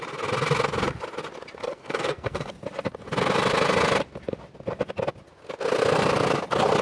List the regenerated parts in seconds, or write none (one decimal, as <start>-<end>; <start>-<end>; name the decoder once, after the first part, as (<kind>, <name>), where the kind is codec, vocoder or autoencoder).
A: 1.6-2.5 (codec, SNAC)